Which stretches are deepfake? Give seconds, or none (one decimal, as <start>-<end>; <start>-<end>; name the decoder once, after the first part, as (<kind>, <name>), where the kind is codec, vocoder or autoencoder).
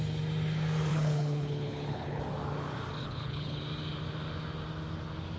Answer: 0.9-2.2 (codec, HILCodec); 3.0-3.6